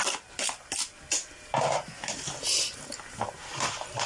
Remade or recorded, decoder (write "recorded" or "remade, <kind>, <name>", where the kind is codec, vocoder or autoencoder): recorded